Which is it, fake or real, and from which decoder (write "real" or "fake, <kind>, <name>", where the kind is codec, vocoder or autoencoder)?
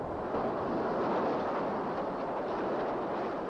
real